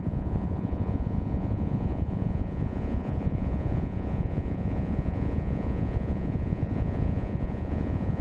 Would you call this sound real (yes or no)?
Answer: no